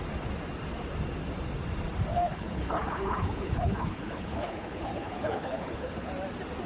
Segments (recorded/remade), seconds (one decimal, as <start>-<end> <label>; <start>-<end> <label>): 0.0-2.1 recorded; 2.1-6.1 remade; 6.1-6.7 recorded